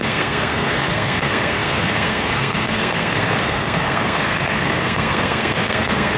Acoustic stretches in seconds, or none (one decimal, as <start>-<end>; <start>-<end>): none